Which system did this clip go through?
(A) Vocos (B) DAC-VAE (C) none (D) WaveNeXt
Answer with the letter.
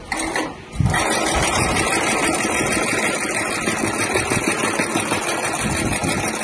C